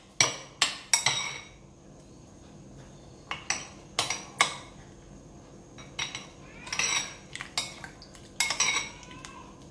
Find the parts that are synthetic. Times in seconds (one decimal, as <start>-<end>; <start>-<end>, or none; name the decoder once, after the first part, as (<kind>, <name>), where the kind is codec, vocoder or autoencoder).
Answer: none

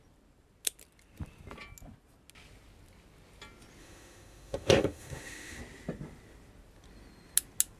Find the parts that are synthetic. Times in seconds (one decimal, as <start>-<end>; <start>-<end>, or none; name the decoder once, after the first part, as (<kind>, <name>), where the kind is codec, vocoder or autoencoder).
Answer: 3.8-5.6 (autoencoder, DAC-VAE)